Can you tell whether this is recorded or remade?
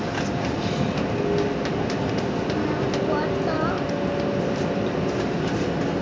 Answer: recorded